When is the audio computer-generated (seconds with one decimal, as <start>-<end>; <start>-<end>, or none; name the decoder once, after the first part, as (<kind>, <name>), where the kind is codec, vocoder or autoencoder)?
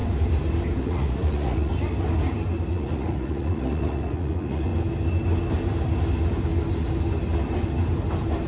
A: 0.8-1.7 (vocoder, Vocos); 2.7-4.7